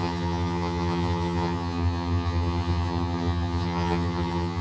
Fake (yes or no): yes